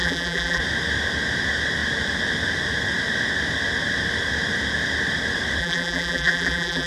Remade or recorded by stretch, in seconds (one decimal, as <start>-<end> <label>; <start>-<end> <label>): 0.0-0.6 remade; 0.6-5.6 recorded; 5.6-6.9 remade